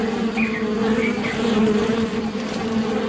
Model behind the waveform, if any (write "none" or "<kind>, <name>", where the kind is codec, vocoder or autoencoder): none